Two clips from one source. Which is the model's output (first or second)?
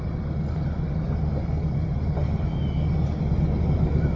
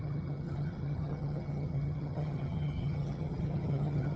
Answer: second